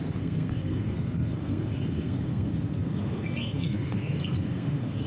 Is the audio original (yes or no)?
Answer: no